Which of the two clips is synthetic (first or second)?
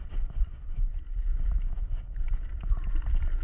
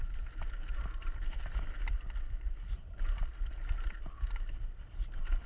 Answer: first